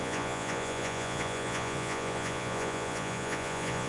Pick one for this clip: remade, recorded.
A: remade